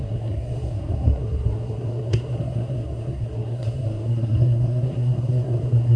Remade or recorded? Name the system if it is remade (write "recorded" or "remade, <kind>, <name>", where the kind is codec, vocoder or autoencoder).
remade, codec, SNAC